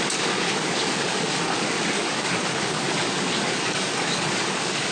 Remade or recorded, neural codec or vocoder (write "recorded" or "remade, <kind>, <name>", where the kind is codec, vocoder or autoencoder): remade, codec, DAC